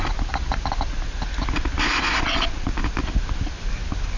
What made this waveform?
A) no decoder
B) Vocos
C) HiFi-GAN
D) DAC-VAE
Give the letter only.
A